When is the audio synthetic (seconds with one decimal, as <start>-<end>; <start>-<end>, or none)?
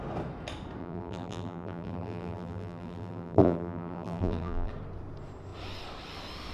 0.8-4.7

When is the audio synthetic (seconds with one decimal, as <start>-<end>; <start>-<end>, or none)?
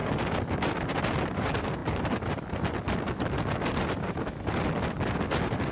none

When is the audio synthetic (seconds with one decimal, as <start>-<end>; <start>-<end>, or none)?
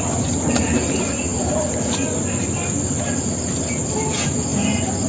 none